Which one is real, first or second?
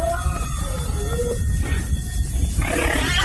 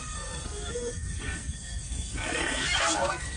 first